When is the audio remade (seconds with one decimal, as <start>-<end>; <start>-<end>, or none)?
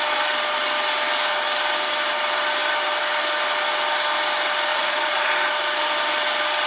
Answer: 4.7-5.3